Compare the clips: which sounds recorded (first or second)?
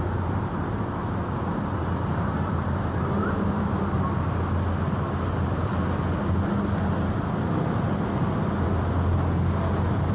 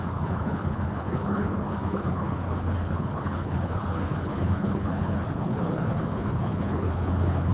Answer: first